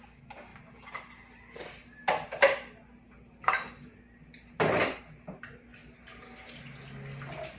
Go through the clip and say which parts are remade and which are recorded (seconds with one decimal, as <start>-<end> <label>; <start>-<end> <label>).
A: 0.0-0.5 recorded; 0.5-5.0 remade; 5.0-7.6 recorded